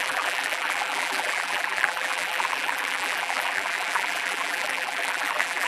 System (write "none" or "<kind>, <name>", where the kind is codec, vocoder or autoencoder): vocoder, BigVGAN v2